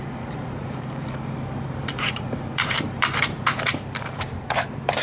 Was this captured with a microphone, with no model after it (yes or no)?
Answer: no